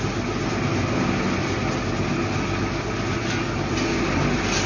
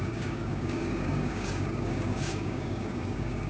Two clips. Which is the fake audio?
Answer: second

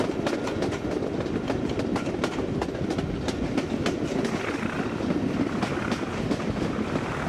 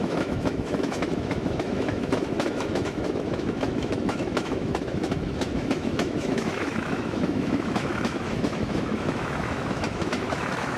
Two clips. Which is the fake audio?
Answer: second